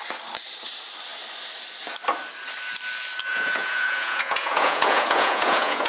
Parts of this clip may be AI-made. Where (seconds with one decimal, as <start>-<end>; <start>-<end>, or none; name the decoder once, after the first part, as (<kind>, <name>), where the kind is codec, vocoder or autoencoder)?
3.3-5.9 (vocoder, Vocos)